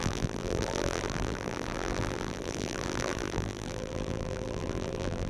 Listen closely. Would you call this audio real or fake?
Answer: fake